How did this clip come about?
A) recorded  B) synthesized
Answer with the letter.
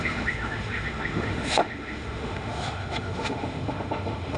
B